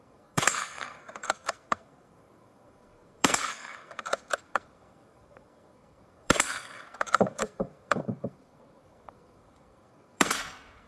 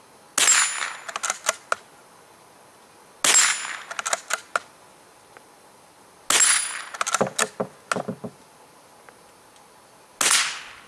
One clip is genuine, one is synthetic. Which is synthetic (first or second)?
first